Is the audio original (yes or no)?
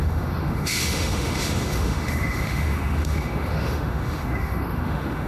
no